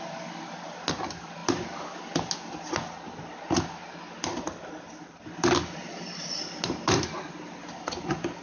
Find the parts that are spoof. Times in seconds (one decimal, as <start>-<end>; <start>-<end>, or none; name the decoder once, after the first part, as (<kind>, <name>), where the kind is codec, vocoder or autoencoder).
none